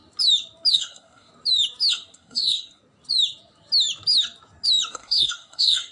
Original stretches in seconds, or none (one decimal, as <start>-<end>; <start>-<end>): 0.0-0.7; 1.3-1.9; 2.8-4.9